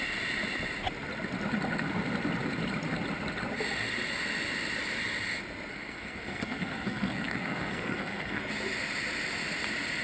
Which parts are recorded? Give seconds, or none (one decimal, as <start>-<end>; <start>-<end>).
0.0-5.7; 8.4-10.0